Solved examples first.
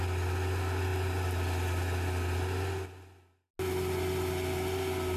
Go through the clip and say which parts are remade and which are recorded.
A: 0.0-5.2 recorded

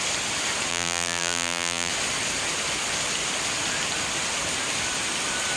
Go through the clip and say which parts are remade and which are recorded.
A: 0.0-0.7 recorded; 0.7-1.9 remade; 1.9-5.6 recorded

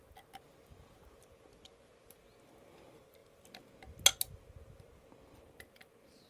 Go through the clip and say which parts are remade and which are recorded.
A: 0.0-6.3 recorded

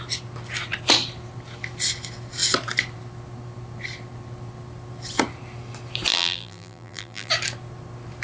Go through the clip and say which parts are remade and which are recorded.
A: 0.0-6.1 recorded; 6.1-7.3 remade; 7.3-8.2 recorded

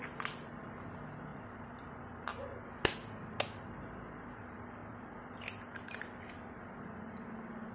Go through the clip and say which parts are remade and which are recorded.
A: 0.0-1.3 recorded; 1.3-1.8 remade; 1.8-4.8 recorded; 4.8-5.5 remade; 5.5-7.7 recorded